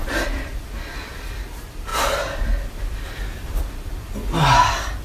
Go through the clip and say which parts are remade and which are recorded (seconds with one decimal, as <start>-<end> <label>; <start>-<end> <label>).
0.0-1.1 remade; 1.1-1.9 recorded; 1.9-3.7 remade; 3.7-5.0 recorded